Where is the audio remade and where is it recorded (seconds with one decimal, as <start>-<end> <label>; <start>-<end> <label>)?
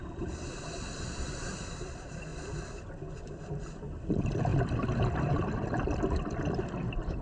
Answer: 0.0-2.3 remade; 2.3-3.1 recorded; 3.1-7.2 remade